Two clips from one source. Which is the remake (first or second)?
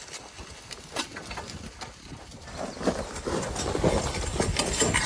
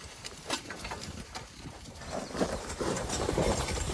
second